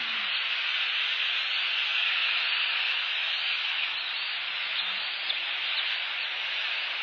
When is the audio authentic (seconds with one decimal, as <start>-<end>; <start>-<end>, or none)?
0.0-7.0